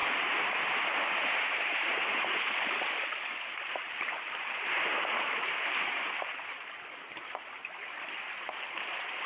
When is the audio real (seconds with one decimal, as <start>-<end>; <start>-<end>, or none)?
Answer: 2.7-3.3; 6.1-9.3